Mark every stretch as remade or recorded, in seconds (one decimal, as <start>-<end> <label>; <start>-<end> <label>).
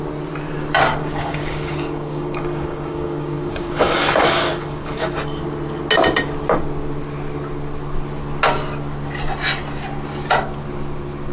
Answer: 0.0-1.0 recorded; 1.0-5.0 remade; 5.0-11.3 recorded